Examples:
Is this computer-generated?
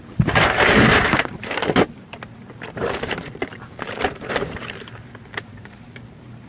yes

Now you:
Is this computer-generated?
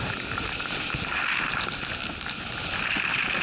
no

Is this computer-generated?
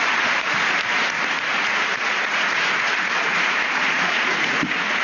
yes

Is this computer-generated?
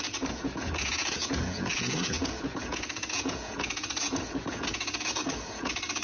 yes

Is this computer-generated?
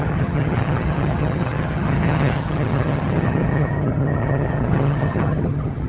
yes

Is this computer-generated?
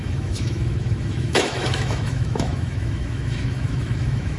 yes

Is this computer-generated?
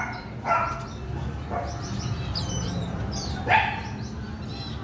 no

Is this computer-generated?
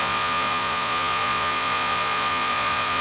yes